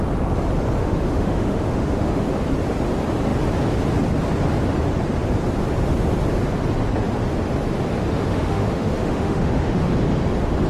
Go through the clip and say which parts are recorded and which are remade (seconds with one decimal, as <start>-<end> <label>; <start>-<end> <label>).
0.0-0.8 recorded; 0.8-2.2 remade; 2.2-8.1 recorded; 8.1-9.9 remade; 9.9-10.7 recorded